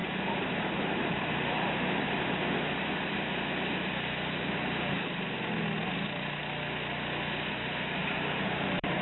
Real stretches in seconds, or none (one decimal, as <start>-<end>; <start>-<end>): 2.3-8.0